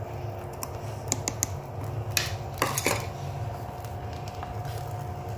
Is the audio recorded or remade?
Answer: recorded